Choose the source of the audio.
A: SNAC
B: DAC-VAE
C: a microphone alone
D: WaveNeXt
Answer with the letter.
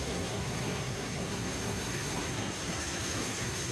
A